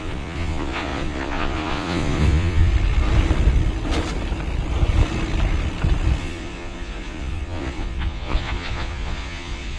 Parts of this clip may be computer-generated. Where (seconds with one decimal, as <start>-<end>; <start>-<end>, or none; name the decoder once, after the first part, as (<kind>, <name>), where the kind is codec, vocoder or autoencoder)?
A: 0.0-2.7 (vocoder, Vocos); 6.2-9.8